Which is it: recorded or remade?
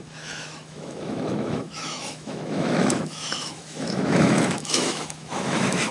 remade